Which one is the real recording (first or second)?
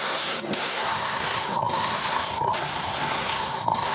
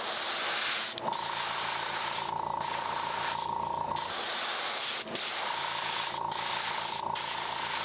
second